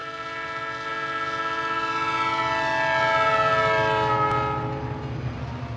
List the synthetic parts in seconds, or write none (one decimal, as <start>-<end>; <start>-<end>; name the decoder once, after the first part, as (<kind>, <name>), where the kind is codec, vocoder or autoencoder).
none